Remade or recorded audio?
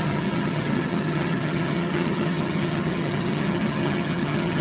remade